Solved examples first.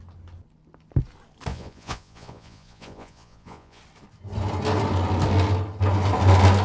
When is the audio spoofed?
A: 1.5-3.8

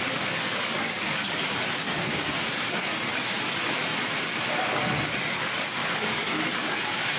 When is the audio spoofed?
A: 0.0-2.9; 5.2-7.2

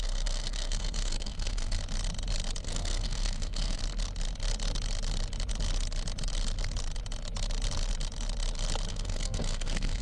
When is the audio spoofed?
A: 0.0-1.8; 2.6-3.8; 8.9-10.0

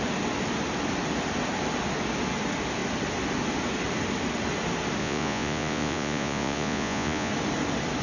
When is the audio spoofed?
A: 5.0-7.3

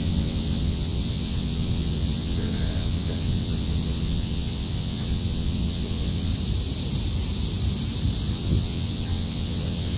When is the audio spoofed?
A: 0.0-6.3; 8.3-10.0

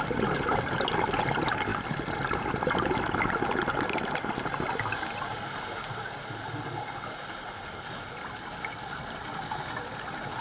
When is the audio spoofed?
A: none

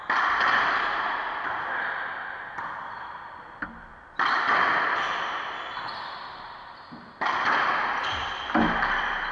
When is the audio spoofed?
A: none

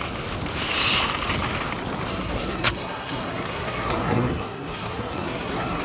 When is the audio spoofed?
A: 2.1-5.8